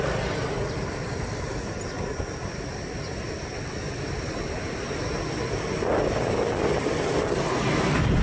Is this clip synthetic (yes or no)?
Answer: no